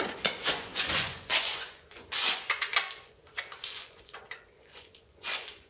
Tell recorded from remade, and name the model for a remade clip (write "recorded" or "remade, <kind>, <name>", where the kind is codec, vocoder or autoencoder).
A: remade, vocoder, Vocos